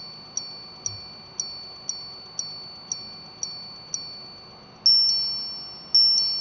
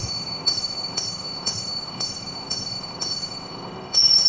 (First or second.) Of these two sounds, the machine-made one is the second